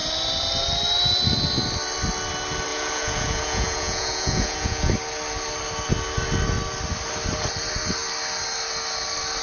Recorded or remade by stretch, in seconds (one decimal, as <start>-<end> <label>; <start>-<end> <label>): 0.0-2.7 recorded; 2.7-4.9 remade; 4.9-9.4 recorded